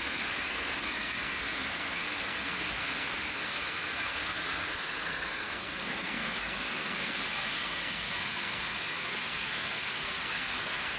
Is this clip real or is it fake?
fake